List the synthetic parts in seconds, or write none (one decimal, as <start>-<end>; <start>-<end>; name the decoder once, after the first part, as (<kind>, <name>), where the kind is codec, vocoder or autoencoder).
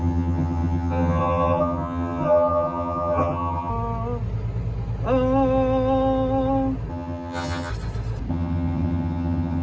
0.0-3.7 (vocoder, HiFi-GAN); 6.9-7.7; 8.3-9.6